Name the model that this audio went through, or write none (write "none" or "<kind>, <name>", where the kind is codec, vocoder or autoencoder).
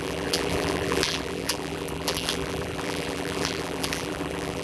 vocoder, BigVGAN v2